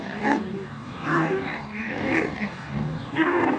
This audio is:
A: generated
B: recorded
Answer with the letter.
A